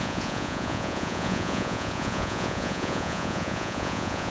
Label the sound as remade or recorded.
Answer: remade